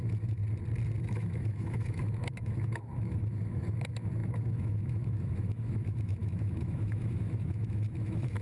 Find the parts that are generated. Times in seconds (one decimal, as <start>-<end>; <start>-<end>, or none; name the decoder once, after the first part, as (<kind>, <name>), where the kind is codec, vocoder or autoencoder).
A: 0.0-0.4 (autoencoder, DAC-VAE); 1.0-8.4